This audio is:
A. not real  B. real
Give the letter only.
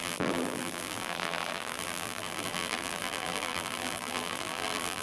A